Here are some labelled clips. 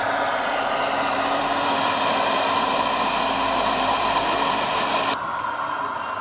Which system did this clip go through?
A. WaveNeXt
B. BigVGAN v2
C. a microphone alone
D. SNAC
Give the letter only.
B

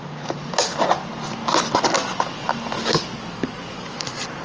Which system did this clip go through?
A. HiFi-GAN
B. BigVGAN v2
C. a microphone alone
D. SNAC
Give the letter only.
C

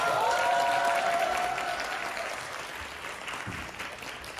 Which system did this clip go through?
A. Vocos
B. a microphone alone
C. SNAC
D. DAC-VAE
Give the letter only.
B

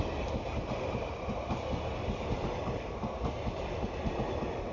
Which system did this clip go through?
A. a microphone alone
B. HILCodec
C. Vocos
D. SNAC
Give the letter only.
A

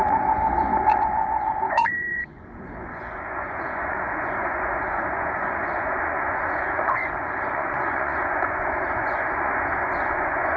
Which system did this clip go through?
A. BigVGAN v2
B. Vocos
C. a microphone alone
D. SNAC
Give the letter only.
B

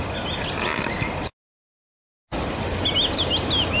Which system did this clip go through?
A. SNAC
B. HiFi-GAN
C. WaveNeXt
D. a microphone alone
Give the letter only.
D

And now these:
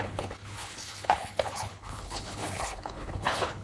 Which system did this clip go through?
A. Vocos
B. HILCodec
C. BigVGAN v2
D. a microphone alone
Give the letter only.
B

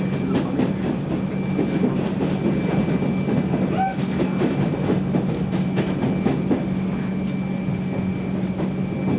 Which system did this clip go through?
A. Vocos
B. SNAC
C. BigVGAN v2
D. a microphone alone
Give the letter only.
D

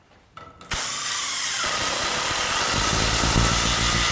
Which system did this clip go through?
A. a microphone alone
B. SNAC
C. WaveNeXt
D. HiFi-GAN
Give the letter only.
A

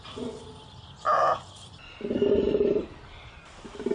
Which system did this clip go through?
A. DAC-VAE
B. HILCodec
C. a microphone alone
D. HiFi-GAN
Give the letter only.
C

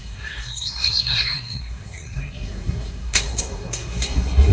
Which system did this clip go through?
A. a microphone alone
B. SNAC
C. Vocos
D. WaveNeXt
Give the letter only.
B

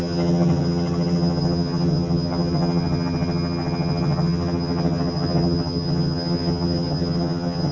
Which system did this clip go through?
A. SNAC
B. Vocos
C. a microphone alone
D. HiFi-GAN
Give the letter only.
D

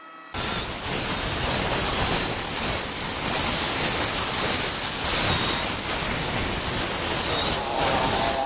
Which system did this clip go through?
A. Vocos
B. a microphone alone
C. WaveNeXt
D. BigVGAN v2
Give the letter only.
B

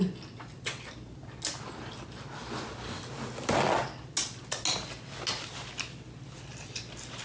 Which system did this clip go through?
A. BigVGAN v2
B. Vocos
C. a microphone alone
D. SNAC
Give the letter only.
C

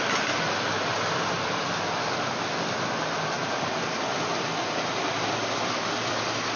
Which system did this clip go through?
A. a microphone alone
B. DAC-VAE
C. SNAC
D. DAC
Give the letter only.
A